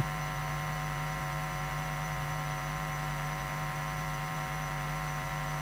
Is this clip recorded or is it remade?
remade